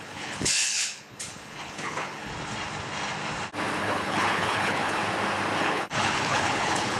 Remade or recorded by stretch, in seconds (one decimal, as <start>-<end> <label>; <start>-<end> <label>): 0.0-2.3 remade; 2.3-3.8 recorded; 3.8-5.0 remade; 5.0-5.6 recorded; 5.6-7.0 remade